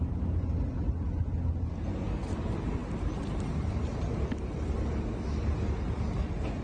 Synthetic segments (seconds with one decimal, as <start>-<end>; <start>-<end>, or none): none